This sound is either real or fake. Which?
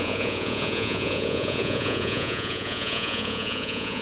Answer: fake